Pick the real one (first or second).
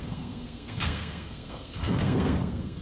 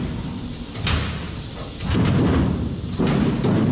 second